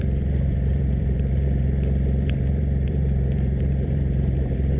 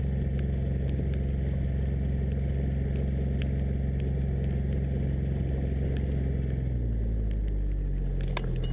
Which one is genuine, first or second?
second